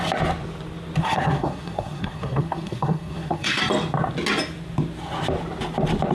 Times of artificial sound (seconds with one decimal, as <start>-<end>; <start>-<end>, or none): 1.0-3.6